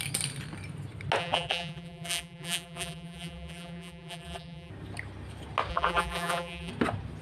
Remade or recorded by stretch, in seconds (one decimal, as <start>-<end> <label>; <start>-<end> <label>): 0.0-1.2 recorded; 1.2-4.7 remade; 4.7-5.7 recorded; 5.7-6.7 remade; 6.7-7.2 recorded